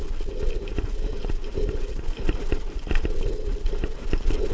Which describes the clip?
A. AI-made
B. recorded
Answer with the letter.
B